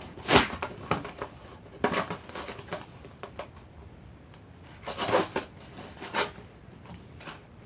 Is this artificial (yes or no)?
no